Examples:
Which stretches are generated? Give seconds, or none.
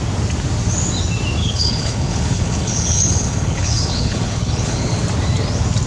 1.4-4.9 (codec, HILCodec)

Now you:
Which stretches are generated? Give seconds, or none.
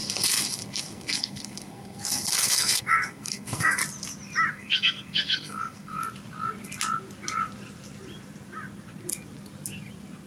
0.0-3.8 (codec, SNAC); 4.5-6.0